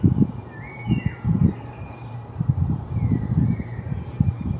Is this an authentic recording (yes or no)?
yes